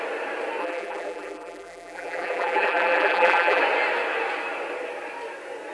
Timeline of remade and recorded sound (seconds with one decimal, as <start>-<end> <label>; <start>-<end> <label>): 0.0-0.6 recorded; 0.6-3.6 remade; 3.6-5.7 recorded